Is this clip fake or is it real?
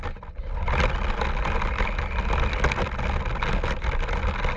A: real